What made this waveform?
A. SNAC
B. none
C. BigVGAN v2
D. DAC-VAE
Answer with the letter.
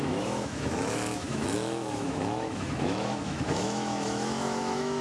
D